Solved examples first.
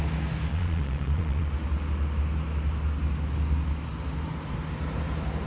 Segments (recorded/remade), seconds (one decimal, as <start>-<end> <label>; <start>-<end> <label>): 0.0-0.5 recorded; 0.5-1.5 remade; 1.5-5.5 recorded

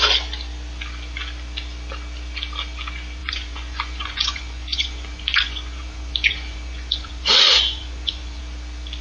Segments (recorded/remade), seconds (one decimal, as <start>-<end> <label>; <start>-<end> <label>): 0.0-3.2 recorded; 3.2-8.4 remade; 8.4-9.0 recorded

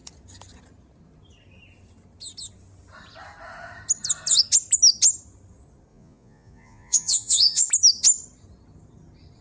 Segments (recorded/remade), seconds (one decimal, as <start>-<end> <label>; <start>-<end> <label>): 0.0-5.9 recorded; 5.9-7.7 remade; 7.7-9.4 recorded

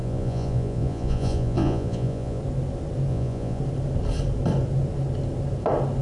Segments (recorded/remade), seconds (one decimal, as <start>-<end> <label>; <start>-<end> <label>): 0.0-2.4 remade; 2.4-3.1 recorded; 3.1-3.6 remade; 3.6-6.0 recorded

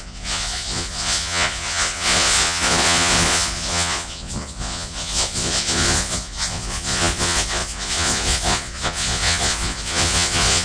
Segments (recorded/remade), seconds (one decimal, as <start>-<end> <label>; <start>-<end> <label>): 0.0-10.6 remade

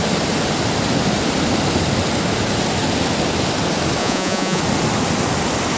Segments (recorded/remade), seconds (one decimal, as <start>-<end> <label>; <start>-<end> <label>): 0.0-4.0 recorded; 4.0-4.6 remade; 4.6-5.8 recorded